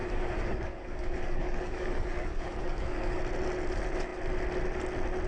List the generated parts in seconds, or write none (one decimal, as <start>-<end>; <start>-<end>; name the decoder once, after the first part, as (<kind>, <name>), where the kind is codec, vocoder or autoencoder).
0.0-3.2 (codec, DAC)

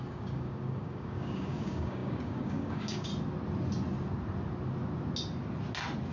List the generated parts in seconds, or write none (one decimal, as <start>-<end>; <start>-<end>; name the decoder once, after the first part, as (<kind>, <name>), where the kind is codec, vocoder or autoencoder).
0.0-3.1 (codec, DAC)

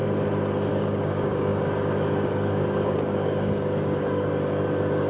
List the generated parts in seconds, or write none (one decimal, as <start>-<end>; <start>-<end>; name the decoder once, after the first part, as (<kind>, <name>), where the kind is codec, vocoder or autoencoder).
0.7-5.1 (codec, DAC)

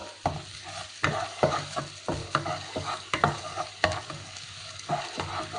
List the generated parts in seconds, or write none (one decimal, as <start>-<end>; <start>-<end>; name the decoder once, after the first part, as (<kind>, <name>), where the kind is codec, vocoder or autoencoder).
1.3-1.8 (codec, DAC); 2.2-5.0

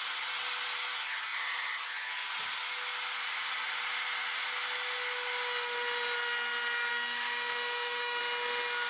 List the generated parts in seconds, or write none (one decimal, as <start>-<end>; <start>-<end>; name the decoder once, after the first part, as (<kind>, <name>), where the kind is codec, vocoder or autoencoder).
6.9-8.2 (codec, DAC)

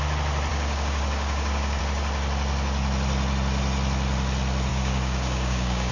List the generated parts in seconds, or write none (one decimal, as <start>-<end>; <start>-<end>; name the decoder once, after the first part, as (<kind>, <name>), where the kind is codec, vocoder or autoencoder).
0.5-1.8 (codec, DAC); 4.7-5.9